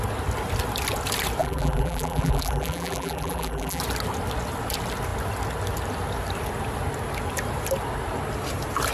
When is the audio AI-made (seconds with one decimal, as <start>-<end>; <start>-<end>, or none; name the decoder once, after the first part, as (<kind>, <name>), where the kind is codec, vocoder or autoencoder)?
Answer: 1.4-3.8 (vocoder, BigVGAN v2)